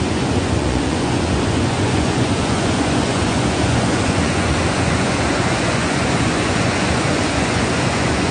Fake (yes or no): yes